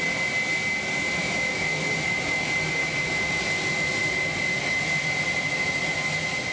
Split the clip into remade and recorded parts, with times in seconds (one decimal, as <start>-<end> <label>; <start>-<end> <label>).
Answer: 0.0-1.2 recorded; 1.2-1.8 remade; 1.8-2.8 recorded; 2.8-3.4 remade; 3.4-6.5 recorded